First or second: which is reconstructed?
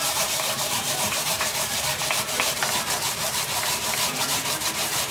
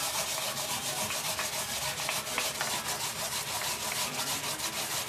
first